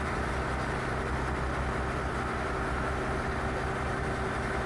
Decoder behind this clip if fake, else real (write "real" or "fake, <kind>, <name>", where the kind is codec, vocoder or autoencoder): real